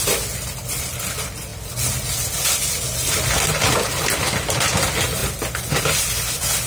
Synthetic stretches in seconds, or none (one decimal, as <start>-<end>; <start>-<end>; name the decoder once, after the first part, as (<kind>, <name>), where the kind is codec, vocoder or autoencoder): none